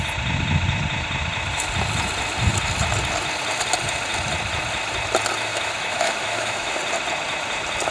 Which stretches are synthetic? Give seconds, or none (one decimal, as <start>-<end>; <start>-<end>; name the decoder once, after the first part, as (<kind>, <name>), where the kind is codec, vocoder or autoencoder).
5.5-6.8 (autoencoder, DAC-VAE)